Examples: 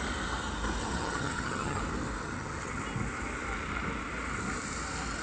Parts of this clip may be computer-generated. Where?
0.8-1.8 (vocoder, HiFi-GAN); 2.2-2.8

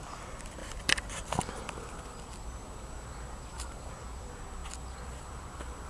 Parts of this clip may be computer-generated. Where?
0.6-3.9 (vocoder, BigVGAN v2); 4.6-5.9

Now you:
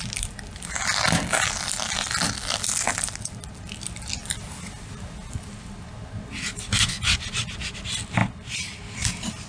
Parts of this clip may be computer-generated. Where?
none